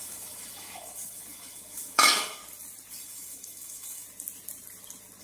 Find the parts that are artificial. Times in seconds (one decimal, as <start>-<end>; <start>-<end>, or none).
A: 0.0-2.4; 3.0-4.0